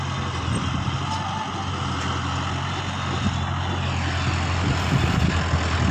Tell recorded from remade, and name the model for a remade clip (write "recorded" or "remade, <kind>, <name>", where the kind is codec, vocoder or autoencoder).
recorded